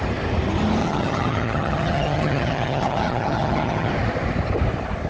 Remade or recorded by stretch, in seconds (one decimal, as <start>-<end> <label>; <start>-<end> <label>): 0.0-0.8 recorded; 0.8-3.9 remade; 3.9-5.1 recorded